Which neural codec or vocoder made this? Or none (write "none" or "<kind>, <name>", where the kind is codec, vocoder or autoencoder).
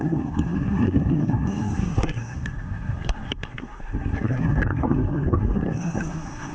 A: codec, SNAC